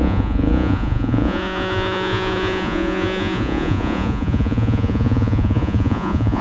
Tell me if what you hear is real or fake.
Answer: fake